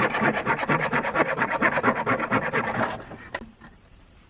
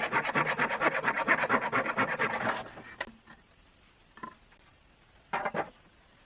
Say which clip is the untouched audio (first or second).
second